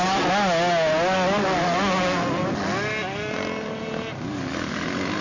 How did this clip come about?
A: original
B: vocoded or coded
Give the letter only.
A